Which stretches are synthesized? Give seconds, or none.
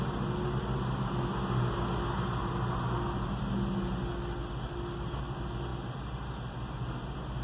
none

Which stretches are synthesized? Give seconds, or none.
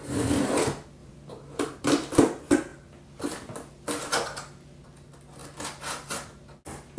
1.0-2.2 (vocoder, BigVGAN v2)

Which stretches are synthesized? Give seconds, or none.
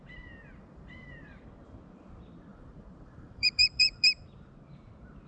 0.5-1.4 (vocoder, BigVGAN v2); 2.5-4.0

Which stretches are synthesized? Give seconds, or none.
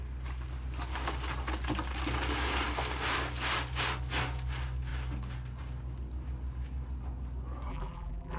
7.7-8.4 (vocoder, BigVGAN v2)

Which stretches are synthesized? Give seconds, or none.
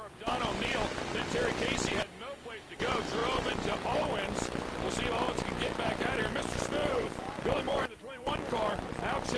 6.8-9.0 (vocoder, BigVGAN v2)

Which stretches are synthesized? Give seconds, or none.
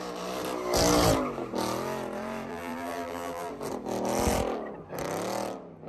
2.5-3.5 (vocoder, BigVGAN v2)